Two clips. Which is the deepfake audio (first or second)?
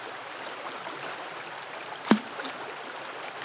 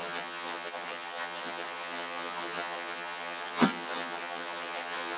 second